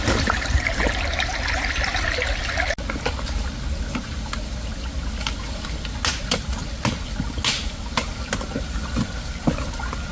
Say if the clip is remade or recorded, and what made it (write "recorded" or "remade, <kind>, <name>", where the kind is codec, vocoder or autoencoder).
recorded